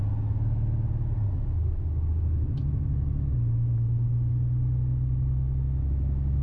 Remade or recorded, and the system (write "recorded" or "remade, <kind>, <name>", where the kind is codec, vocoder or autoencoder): recorded